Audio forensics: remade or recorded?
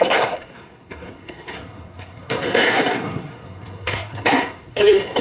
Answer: remade